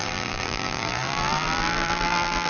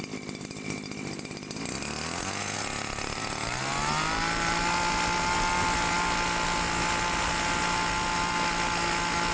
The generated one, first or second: first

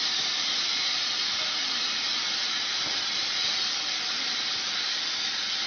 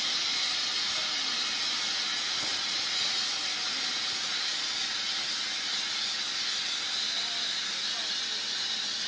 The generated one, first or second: first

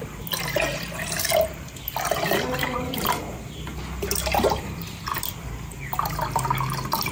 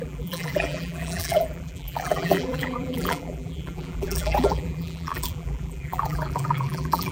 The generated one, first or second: second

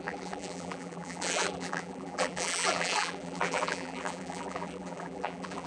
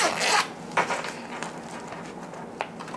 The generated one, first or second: first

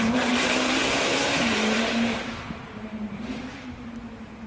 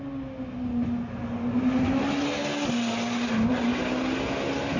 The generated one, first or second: first